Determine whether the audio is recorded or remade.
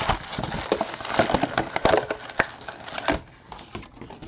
recorded